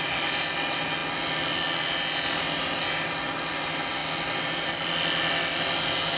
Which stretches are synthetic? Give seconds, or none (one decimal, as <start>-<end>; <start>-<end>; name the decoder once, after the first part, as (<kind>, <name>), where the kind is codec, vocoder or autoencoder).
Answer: none